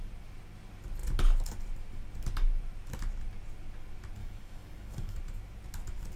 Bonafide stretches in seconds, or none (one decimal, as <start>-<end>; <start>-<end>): 0.0-4.2; 5.2-6.2